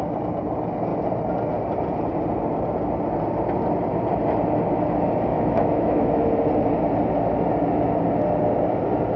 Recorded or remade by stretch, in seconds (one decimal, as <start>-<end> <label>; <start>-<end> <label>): 0.0-5.3 recorded; 5.3-6.3 remade; 6.3-9.2 recorded

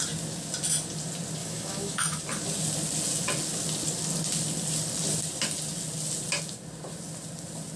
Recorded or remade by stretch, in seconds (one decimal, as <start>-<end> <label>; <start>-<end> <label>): 0.0-1.4 recorded; 1.4-2.2 remade; 2.2-7.8 recorded